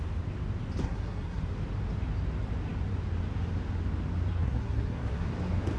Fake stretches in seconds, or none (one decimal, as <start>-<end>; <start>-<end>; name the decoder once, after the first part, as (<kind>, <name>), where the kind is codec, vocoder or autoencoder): 0.8-1.4 (codec, SNAC); 4.3-5.3